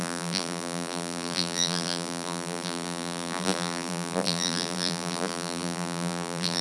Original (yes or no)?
no